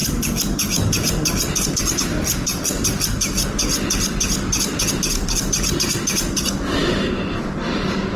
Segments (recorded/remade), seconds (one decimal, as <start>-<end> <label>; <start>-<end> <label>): 0.0-8.2 recorded